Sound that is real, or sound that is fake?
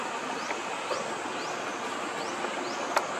real